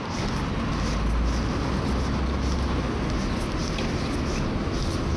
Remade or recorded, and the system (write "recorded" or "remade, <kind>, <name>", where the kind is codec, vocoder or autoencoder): recorded